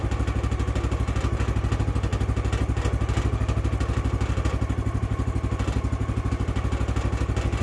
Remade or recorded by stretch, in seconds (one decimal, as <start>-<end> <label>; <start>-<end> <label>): 0.0-7.6 recorded